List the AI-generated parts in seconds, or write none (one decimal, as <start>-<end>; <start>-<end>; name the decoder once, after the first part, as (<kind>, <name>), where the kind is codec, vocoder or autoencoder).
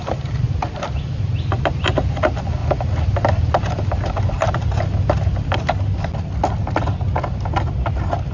none